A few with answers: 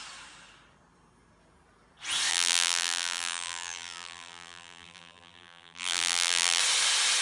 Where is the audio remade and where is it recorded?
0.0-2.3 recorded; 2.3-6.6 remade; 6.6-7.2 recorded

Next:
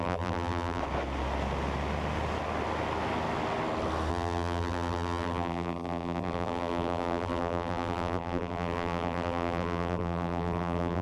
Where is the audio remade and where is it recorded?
0.0-0.8 remade; 0.8-4.1 recorded; 4.1-11.0 remade

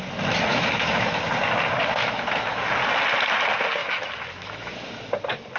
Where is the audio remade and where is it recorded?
0.0-0.5 recorded; 0.5-1.2 remade; 1.2-2.0 recorded; 2.0-2.7 remade; 2.7-3.8 recorded; 3.8-4.9 remade; 4.9-5.6 recorded

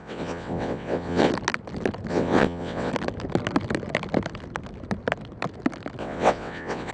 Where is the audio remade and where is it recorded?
0.0-1.3 remade; 1.3-2.1 recorded; 2.1-2.9 remade; 2.9-6.0 recorded; 6.0-6.9 remade

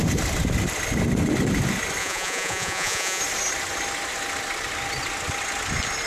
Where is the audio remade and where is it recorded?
0.0-2.0 recorded; 2.0-3.2 remade; 3.2-6.1 recorded

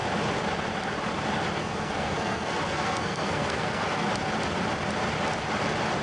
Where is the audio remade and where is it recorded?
0.0-1.6 recorded; 1.6-4.1 remade; 4.1-6.0 recorded

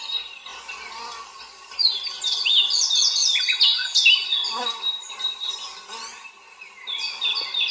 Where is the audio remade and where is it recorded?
0.0-7.7 recorded